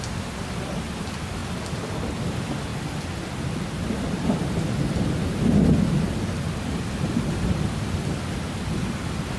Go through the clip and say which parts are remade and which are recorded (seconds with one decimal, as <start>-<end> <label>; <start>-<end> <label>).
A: 0.0-9.4 recorded

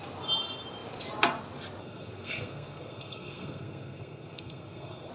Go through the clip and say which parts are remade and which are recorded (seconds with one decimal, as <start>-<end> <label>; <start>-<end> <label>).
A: 0.0-1.8 recorded; 1.8-5.1 remade

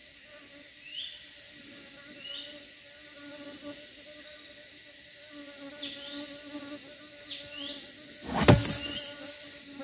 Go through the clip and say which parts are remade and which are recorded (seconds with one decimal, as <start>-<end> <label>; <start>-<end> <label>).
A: 0.0-9.8 recorded

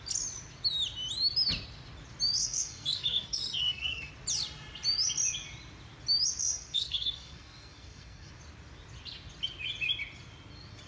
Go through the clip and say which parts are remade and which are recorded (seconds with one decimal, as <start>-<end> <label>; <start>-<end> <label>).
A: 0.0-2.4 recorded; 2.4-4.1 remade; 4.1-6.4 recorded; 6.4-8.3 remade; 8.3-10.9 recorded

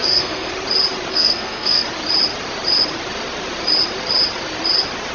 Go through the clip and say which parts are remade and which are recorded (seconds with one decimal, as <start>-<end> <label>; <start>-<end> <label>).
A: 0.0-0.5 remade; 0.5-1.1 recorded; 1.1-1.8 remade; 1.8-5.1 recorded

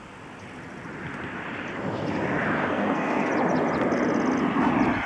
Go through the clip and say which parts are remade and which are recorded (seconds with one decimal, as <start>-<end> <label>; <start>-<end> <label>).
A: 0.0-2.6 recorded; 2.6-3.3 remade; 3.3-5.1 recorded

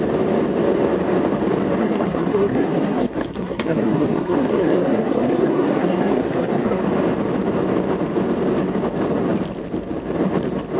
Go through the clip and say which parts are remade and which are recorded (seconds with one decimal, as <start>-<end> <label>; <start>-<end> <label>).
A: 0.0-1.8 recorded; 1.8-6.8 remade; 6.8-10.8 recorded